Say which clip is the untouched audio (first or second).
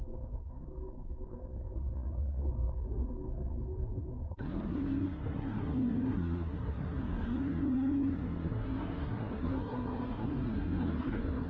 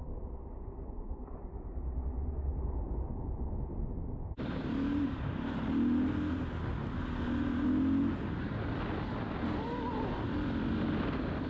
second